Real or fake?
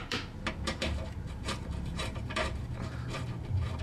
fake